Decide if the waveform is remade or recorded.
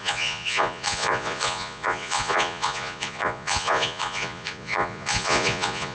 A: remade